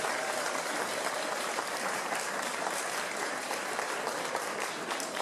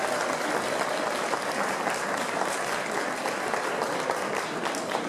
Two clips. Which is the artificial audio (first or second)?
first